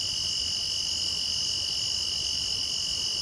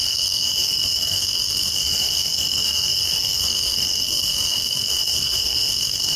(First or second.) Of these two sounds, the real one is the first